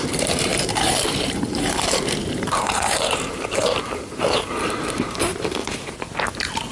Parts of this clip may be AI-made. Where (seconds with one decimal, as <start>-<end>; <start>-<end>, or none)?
0.0-6.7